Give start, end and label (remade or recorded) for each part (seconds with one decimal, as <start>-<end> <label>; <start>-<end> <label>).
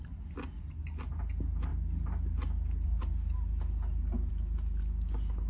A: 0.0-5.5 recorded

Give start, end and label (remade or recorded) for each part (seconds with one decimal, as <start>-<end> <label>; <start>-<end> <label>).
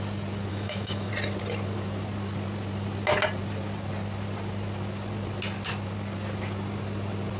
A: 0.0-0.5 recorded; 0.5-1.1 remade; 1.1-7.4 recorded